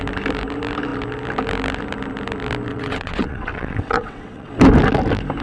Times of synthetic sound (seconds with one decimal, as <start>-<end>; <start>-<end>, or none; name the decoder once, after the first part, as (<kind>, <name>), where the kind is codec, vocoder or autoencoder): 2.7-4.5 (vocoder, WaveNeXt)